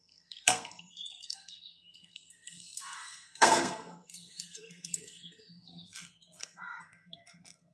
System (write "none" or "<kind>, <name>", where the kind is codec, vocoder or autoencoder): codec, SNAC